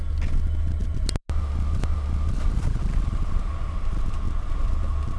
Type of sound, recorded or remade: recorded